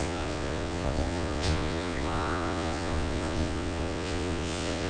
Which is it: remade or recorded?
remade